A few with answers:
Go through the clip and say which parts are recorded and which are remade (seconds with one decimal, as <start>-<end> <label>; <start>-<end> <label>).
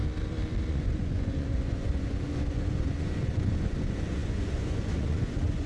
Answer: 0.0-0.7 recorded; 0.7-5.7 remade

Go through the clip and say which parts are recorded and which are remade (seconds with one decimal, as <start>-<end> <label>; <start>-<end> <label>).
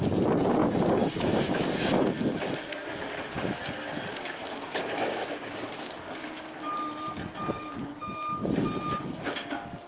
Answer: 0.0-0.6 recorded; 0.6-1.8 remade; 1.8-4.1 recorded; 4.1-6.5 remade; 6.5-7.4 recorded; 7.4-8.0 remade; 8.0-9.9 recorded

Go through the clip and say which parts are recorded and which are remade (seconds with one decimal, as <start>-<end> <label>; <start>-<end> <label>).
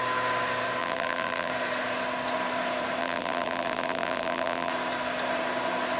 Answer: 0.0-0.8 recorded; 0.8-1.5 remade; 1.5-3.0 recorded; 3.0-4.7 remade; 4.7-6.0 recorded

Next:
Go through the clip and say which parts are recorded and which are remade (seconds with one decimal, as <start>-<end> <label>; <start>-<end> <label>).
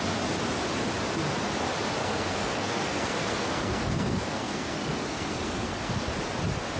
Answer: 0.0-2.0 recorded; 2.0-6.1 remade; 6.1-6.8 recorded